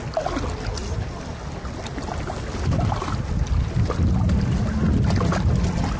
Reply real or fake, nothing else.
real